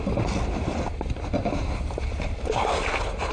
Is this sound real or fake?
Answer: real